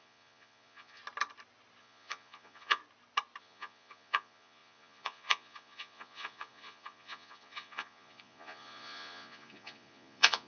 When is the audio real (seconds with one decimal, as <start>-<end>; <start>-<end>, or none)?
1.0-1.8; 2.8-3.4